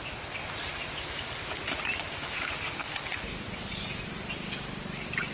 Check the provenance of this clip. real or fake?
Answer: real